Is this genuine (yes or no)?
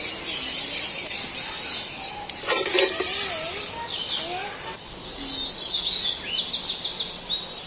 yes